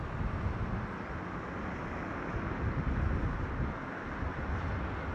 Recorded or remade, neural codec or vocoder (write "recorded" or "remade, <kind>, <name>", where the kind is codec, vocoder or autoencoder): recorded